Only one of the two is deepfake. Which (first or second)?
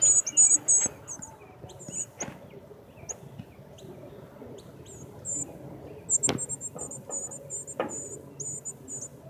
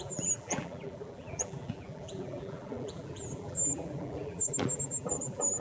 second